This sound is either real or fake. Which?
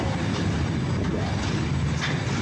real